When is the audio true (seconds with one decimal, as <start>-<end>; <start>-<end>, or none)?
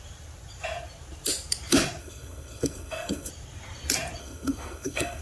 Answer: 0.0-2.0; 3.3-4.2